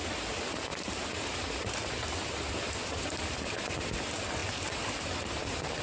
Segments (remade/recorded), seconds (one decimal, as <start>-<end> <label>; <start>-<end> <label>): 0.0-5.8 recorded